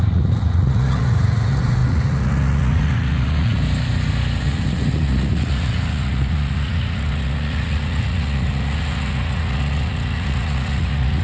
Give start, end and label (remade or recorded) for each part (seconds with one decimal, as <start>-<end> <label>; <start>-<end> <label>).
0.0-3.6 remade; 3.6-4.4 recorded; 4.4-11.2 remade